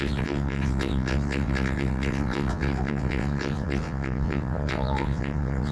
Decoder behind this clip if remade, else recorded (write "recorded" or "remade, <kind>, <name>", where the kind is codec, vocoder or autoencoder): remade, vocoder, WaveNeXt